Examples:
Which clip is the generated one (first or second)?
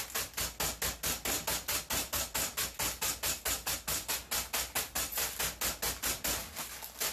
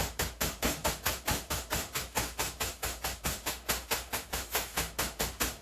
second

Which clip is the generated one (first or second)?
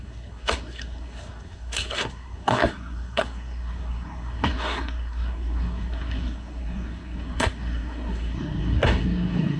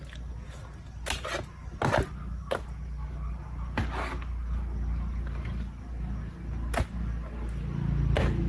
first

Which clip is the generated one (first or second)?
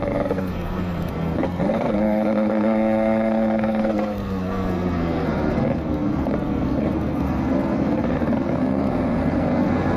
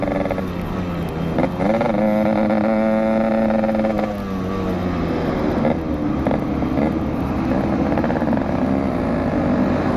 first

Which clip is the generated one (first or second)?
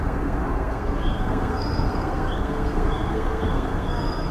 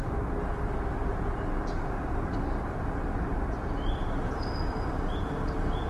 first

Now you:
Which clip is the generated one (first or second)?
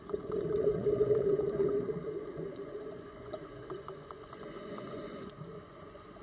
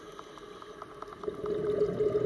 first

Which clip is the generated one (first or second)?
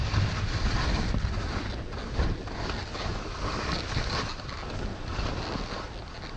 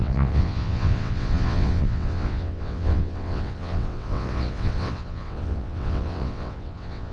second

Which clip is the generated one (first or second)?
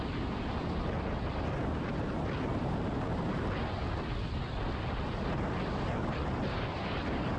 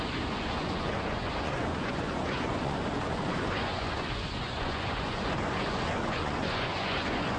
second